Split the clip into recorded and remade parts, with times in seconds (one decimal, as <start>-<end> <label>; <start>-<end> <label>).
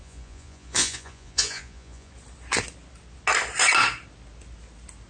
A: 0.0-2.1 remade; 2.1-5.1 recorded